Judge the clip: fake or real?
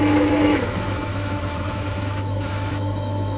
fake